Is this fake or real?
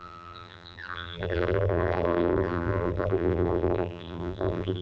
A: fake